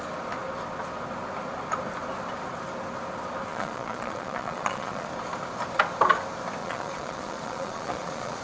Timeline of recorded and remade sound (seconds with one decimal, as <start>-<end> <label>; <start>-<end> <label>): 0.0-3.5 recorded; 3.5-5.1 remade; 5.1-6.6 recorded; 6.6-8.4 remade